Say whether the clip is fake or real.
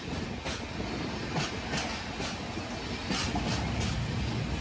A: real